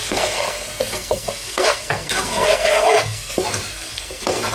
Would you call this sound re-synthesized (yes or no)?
yes